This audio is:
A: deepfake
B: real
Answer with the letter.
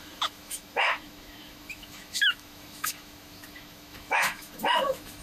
A